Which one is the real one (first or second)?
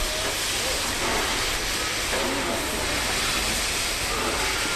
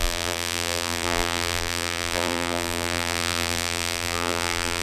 first